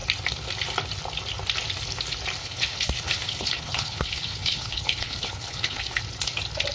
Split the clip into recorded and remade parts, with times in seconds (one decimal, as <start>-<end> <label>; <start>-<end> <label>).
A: 0.0-2.4 recorded; 2.4-6.0 remade; 6.0-6.7 recorded